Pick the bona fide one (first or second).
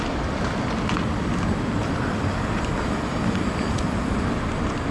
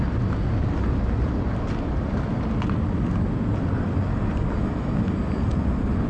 second